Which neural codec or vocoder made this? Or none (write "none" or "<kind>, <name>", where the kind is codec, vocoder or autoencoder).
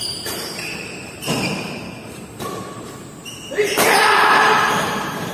vocoder, BigVGAN v2